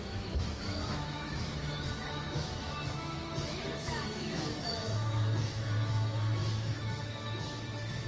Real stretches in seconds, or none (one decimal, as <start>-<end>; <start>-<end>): none